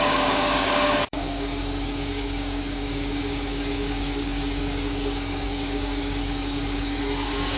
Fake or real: fake